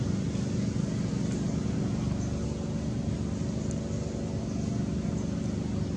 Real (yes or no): yes